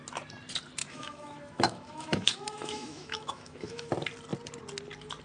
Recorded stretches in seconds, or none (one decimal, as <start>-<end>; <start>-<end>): 0.0-0.8; 3.9-5.2